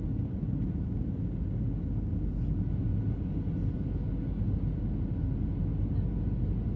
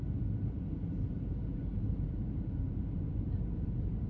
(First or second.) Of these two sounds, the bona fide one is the first